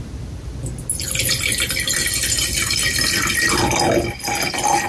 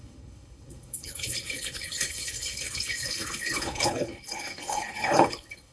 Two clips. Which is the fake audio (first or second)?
second